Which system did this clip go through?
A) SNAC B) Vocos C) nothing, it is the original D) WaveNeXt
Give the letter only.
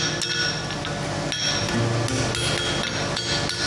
C